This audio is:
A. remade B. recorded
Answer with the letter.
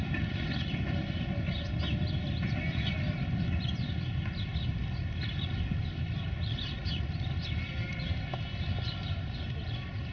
B